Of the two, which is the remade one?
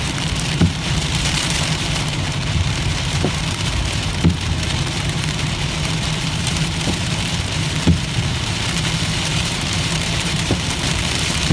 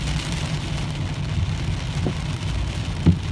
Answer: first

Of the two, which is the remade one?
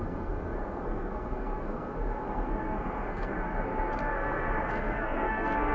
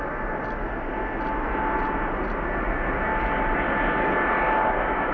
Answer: first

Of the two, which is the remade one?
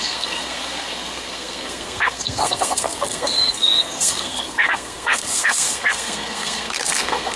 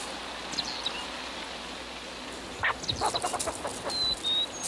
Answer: first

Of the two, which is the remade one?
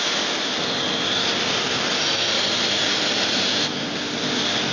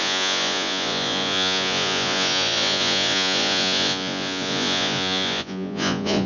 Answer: second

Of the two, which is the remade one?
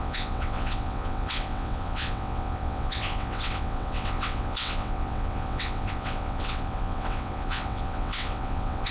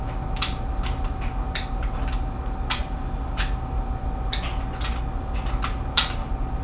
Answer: first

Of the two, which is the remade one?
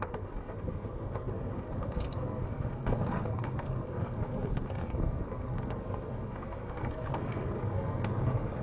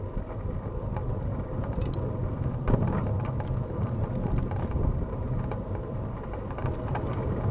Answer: first